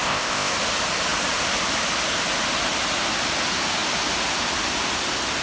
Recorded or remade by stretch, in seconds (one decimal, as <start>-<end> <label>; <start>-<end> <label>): 0.0-0.5 remade; 0.5-5.4 recorded